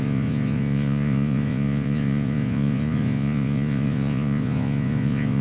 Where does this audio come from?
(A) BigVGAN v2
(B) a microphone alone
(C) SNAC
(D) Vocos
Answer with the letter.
D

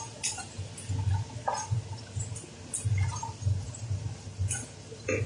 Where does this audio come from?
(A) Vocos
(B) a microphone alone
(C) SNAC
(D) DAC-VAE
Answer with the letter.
B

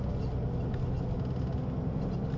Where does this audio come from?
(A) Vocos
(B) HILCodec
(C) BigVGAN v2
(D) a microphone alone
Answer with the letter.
D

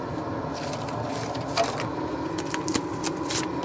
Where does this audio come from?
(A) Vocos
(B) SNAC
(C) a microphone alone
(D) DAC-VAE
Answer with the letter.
C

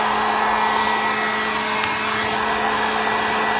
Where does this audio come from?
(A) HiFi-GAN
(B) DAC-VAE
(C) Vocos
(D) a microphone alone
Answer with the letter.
D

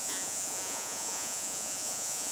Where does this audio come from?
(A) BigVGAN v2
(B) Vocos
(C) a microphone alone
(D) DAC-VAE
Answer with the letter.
B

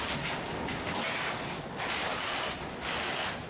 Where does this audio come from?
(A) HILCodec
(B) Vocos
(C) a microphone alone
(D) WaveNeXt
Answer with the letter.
C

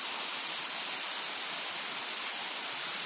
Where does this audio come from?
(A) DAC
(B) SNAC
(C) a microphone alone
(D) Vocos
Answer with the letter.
C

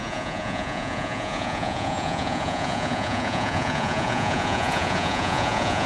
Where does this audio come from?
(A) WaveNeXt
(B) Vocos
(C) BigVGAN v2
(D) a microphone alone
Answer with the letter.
B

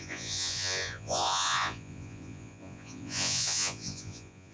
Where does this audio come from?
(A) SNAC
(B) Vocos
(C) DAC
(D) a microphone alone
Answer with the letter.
B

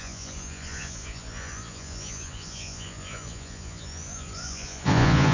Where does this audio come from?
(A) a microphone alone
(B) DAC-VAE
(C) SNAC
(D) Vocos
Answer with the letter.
D